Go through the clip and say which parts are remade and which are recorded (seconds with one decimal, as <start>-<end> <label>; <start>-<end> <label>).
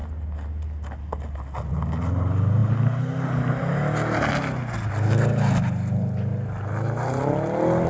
0.0-7.9 recorded